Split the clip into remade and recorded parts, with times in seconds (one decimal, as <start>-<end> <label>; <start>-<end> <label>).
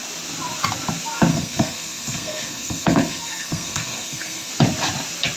0.0-1.3 recorded; 1.3-4.5 remade; 4.5-5.4 recorded